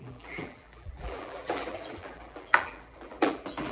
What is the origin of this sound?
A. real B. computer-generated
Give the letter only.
B